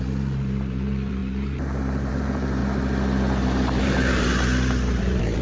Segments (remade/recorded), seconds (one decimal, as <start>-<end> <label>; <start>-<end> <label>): 0.0-2.6 remade; 2.6-3.8 recorded; 3.8-4.3 remade; 4.3-4.9 recorded; 4.9-5.4 remade